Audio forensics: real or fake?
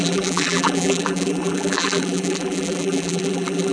fake